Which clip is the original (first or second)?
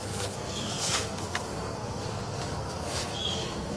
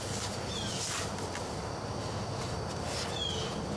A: second